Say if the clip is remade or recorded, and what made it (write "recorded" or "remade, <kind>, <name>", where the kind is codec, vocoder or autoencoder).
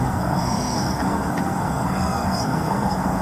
remade, codec, SNAC